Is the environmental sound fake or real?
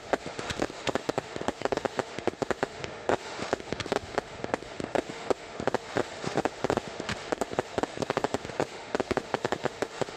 fake